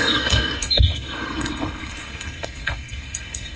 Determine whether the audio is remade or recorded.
remade